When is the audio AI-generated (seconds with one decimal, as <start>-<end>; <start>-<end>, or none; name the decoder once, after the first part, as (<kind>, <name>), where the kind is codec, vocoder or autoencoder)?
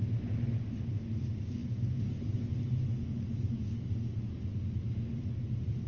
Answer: none